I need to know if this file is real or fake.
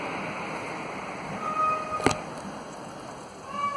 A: real